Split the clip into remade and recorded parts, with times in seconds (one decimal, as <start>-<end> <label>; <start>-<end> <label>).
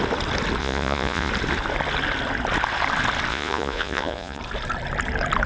0.0-0.6 recorded; 0.6-1.3 remade; 1.3-3.3 recorded; 3.3-4.4 remade; 4.4-5.5 recorded